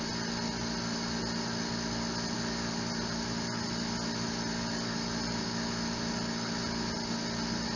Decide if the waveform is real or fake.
real